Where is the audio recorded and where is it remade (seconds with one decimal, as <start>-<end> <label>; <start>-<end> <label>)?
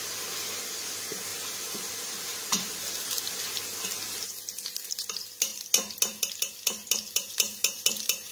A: 0.0-1.3 recorded; 1.3-3.4 remade; 3.4-7.3 recorded; 7.3-8.3 remade